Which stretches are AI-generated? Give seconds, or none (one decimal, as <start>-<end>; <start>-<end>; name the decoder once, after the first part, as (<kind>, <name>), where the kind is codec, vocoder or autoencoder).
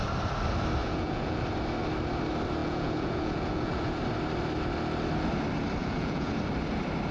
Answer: 0.8-1.4 (vocoder, Vocos); 2.6-4.0; 5.8-6.4